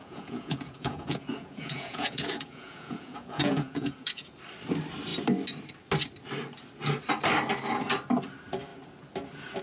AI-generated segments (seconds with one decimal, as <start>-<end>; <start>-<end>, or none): 0.0-4.3